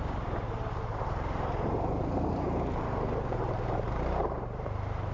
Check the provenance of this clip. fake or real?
fake